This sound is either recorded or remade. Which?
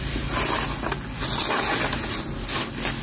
recorded